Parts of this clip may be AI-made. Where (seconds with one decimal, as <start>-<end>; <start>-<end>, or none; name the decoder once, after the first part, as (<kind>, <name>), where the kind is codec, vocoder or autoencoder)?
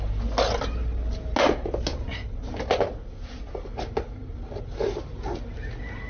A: none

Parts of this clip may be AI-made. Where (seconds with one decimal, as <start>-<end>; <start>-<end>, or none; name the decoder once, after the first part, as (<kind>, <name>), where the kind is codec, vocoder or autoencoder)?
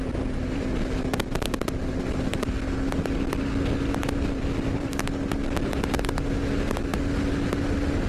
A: none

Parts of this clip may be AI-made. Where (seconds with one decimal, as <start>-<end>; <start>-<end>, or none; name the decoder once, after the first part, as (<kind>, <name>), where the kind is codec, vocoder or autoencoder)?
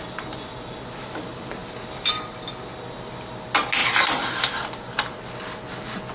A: 1.6-2.4 (vocoder, BigVGAN v2); 3.8-5.3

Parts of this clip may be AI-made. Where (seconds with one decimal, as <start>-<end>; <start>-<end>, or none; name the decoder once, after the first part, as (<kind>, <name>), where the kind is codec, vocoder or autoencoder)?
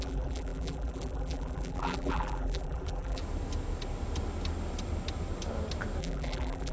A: 0.0-3.2 (vocoder, BigVGAN v2); 6.0-6.7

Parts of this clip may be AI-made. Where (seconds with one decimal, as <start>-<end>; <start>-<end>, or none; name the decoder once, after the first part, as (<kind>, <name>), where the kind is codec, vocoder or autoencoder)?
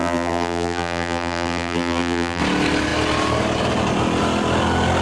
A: 0.0-2.4 (vocoder, BigVGAN v2)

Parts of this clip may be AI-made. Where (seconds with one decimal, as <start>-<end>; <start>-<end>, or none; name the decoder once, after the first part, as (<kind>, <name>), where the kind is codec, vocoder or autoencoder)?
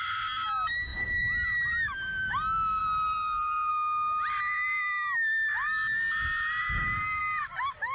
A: 0.9-2.1 (vocoder, BigVGAN v2); 2.8-3.7; 6.6-7.2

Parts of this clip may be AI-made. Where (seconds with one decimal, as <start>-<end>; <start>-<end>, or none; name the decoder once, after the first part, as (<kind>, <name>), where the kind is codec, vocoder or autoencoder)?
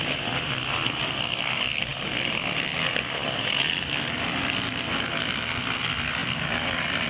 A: none